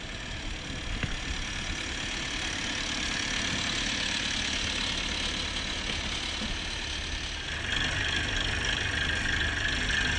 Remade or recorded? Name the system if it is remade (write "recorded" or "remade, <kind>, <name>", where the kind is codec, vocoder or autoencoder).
recorded